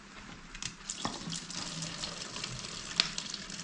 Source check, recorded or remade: recorded